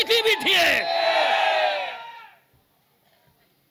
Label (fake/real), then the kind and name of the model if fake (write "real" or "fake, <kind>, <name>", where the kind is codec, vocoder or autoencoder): real